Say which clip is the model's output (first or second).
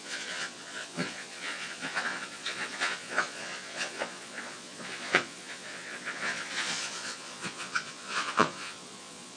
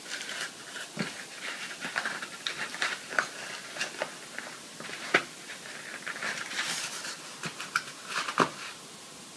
first